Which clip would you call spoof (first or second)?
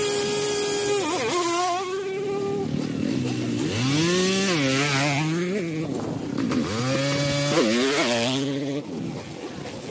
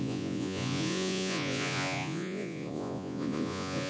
second